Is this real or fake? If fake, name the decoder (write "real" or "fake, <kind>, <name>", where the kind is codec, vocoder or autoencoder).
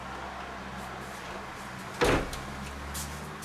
real